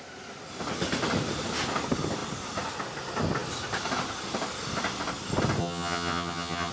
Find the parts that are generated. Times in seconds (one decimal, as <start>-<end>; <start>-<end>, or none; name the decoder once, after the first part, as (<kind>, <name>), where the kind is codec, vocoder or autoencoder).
5.6-6.7 (vocoder, HiFi-GAN)